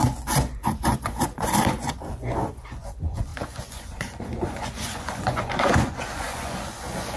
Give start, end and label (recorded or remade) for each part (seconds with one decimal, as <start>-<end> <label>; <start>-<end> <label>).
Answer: 0.0-7.2 remade